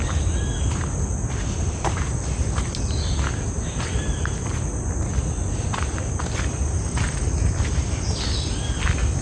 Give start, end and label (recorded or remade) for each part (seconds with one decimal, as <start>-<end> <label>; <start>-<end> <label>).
0.0-9.2 recorded